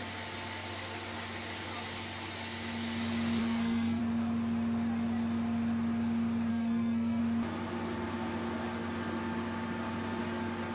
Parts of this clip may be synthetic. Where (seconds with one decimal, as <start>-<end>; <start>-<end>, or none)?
3.4-4.0; 6.5-7.2